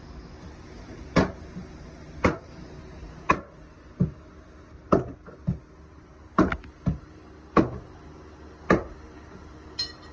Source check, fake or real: real